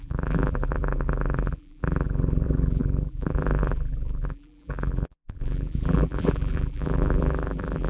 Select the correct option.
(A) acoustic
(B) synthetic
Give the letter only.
B